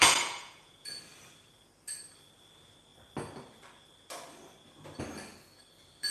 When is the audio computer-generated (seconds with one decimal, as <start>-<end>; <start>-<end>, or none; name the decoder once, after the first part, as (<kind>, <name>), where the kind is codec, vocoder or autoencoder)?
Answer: 0.0-1.0 (vocoder, Vocos)